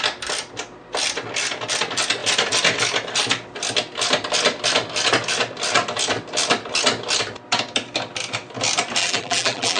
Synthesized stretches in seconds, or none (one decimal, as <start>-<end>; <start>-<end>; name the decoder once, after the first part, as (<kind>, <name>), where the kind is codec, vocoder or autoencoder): 9.0-9.8 (vocoder, BigVGAN v2)